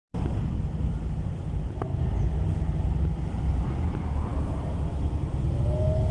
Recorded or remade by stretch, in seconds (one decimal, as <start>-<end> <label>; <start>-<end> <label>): 0.0-6.1 recorded